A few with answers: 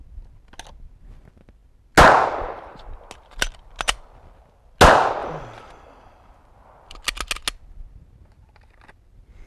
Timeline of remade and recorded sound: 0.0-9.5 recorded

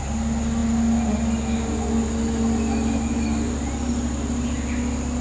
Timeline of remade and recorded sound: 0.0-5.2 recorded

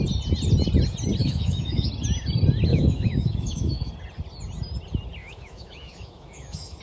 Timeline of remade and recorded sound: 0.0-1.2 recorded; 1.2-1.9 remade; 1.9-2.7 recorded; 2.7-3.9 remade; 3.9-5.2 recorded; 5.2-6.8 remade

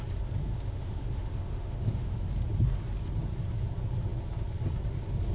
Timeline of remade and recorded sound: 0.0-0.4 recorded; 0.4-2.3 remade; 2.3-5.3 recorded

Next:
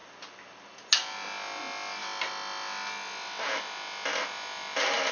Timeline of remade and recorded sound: 0.0-5.1 recorded

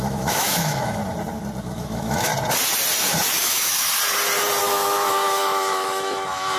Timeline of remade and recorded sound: 0.0-1.0 remade; 1.0-1.6 recorded; 1.6-2.3 remade; 2.3-3.4 recorded; 3.4-3.9 remade; 3.9-4.6 recorded; 4.6-6.6 remade

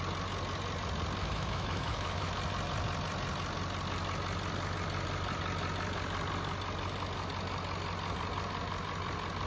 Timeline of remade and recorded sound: 0.0-1.2 recorded; 1.2-2.3 remade; 2.3-9.5 recorded

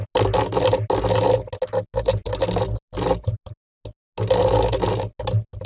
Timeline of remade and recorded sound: 0.0-5.7 recorded